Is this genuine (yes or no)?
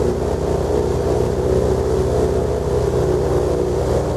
yes